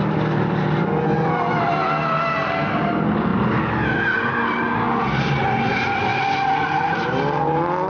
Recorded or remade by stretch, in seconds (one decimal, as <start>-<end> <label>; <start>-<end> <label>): 0.0-7.9 recorded